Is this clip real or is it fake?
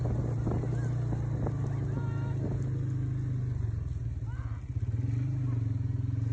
real